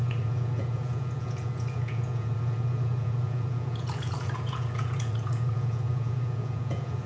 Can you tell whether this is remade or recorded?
remade